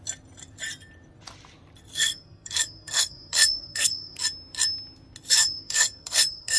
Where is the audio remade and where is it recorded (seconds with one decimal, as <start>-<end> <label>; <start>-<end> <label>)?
0.0-1.9 recorded; 1.9-4.2 remade; 4.2-5.4 recorded; 5.4-6.6 remade